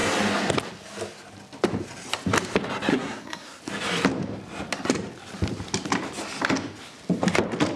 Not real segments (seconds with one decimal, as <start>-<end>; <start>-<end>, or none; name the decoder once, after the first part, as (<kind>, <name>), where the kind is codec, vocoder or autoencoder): 2.9-3.6 (codec, SNAC)